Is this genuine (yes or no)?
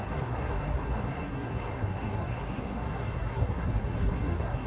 no